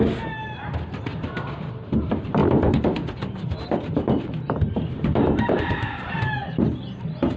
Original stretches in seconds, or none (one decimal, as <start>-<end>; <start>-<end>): 0.0-1.1; 1.8-7.4